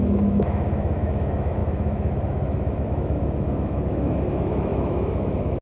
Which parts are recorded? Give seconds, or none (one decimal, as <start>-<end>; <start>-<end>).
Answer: none